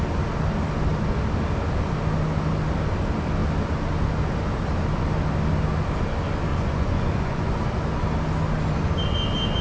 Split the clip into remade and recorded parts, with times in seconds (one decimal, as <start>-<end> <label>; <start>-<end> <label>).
0.0-6.5 recorded; 6.5-7.6 remade; 7.6-9.6 recorded